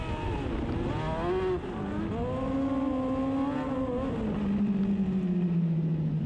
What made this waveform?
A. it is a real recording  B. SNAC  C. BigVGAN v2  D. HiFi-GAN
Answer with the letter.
A